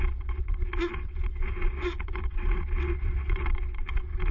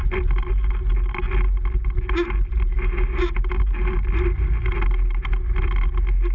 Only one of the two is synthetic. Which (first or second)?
first